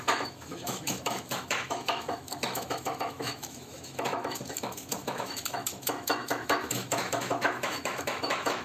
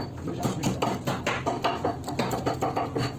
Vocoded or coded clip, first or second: first